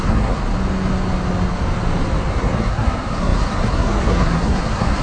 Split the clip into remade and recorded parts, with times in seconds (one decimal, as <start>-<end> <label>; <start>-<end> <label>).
0.0-0.4 remade; 0.4-2.3 recorded; 2.3-5.0 remade